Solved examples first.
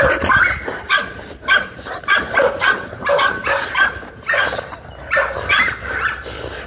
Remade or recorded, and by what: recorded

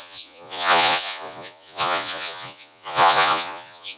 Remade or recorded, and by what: remade, vocoder, Vocos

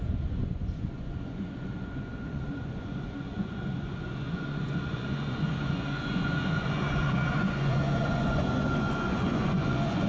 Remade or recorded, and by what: remade, vocoder, Vocos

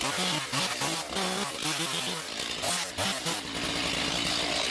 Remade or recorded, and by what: recorded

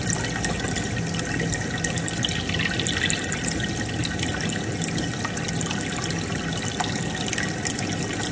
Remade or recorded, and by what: recorded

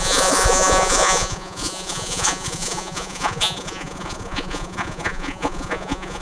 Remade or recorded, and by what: remade, vocoder, Vocos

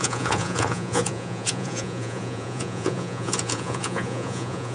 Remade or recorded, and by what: remade, vocoder, Vocos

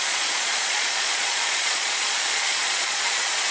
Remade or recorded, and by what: remade, vocoder, Vocos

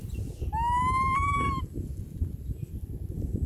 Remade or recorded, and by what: recorded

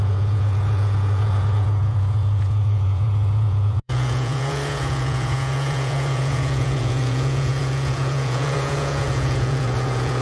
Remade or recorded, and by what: remade, vocoder, Vocos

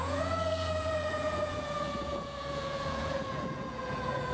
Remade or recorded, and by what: remade, vocoder, Vocos